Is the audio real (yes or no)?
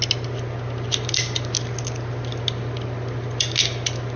yes